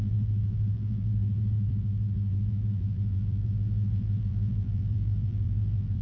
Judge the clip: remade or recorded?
remade